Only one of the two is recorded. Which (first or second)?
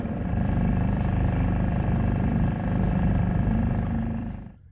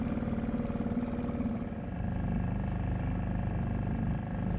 second